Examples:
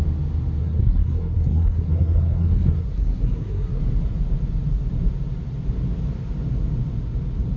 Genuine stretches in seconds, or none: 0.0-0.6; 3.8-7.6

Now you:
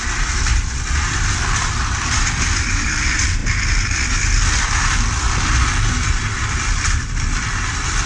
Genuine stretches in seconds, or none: 3.4-4.6